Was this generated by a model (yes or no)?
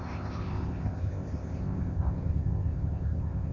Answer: yes